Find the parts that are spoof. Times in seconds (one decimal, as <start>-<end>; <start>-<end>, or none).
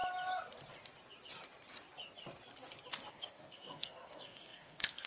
3.1-5.1